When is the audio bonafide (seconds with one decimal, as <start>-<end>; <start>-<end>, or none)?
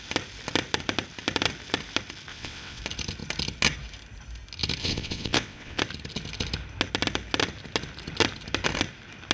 0.0-2.3; 2.8-4.8; 5.8-9.3